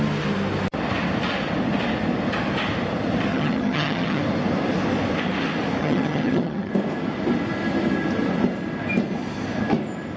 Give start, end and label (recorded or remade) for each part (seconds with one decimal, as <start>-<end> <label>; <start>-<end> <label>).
0.0-3.3 recorded; 3.3-4.2 remade; 4.2-5.8 recorded; 5.8-6.7 remade; 6.7-10.2 recorded